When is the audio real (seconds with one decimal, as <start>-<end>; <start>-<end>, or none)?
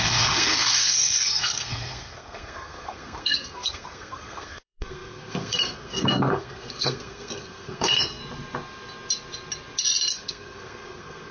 8.2-10.1